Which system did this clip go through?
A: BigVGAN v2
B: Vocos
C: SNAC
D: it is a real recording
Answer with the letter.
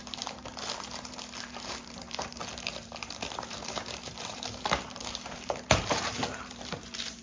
A